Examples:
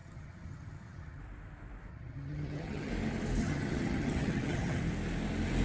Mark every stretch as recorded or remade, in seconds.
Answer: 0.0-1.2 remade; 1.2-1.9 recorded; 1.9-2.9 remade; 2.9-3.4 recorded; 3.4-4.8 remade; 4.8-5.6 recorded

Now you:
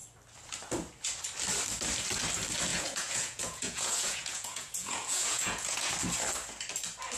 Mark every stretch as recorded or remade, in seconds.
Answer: 0.0-2.7 recorded; 2.7-5.9 remade; 5.9-7.2 recorded

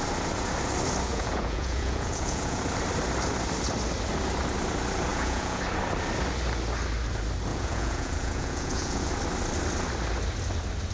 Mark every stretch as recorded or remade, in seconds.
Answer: 0.0-1.1 recorded; 1.1-2.6 remade; 2.6-5.1 recorded; 5.1-5.6 remade; 5.6-7.5 recorded; 7.5-9.1 remade; 9.1-10.9 recorded

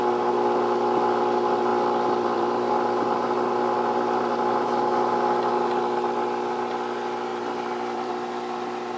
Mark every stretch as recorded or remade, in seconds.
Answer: 0.0-1.7 recorded; 1.7-2.7 remade; 2.7-7.3 recorded; 7.3-8.1 remade; 8.1-9.0 recorded

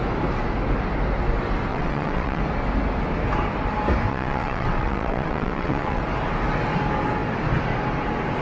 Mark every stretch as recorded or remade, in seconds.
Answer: 0.0-1.7 recorded; 1.7-2.4 remade; 2.4-4.1 recorded; 4.1-6.0 remade; 6.0-8.4 recorded

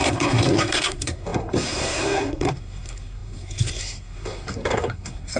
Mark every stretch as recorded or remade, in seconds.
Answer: 0.0-5.4 remade